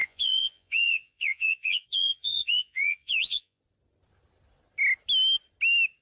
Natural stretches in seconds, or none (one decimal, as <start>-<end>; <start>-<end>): 3.6-6.0